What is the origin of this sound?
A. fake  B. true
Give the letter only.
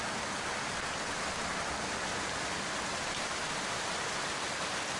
B